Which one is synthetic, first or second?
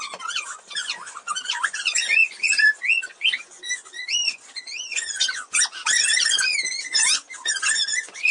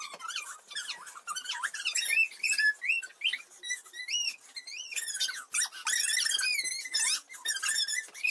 first